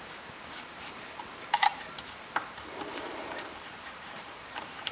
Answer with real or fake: fake